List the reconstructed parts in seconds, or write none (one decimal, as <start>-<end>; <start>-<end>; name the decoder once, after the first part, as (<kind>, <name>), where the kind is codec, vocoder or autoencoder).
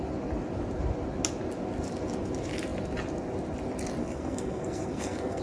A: 4.0-5.4 (codec, SNAC)